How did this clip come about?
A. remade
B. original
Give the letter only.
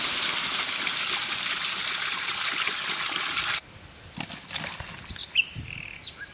B